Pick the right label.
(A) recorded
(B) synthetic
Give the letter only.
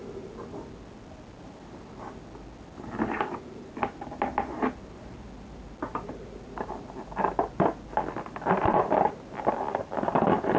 A